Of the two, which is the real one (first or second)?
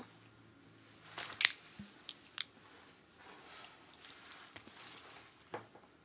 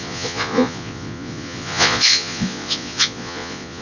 first